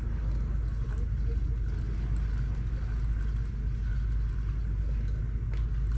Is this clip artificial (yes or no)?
no